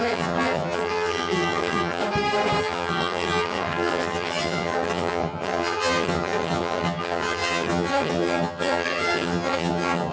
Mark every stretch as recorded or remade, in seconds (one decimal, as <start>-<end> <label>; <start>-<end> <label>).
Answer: 0.0-2.0 remade; 2.0-2.6 recorded; 2.6-10.1 remade